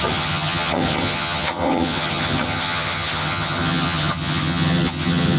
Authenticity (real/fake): fake